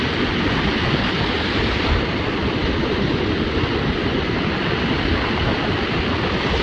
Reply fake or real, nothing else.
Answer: real